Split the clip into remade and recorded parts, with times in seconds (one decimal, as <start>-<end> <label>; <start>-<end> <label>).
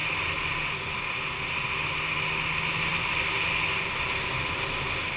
0.0-5.2 recorded